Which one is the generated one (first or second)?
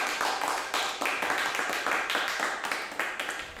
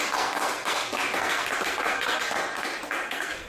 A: second